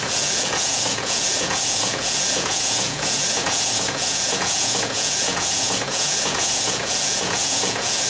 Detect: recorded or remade remade